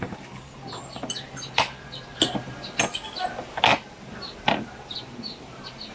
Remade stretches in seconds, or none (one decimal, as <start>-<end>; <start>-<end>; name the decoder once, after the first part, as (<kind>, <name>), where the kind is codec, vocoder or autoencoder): none